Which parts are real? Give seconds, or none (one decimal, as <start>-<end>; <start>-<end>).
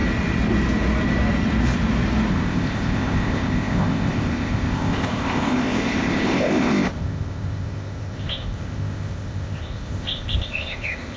0.0-2.3